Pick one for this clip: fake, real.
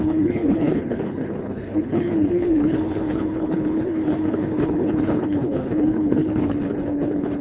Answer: fake